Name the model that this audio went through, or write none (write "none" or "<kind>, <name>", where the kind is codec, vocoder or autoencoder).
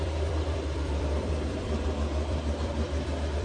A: vocoder, BigVGAN v2